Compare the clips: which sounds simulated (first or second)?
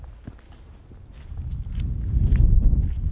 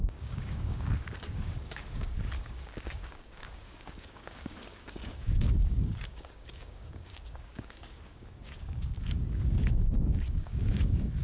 second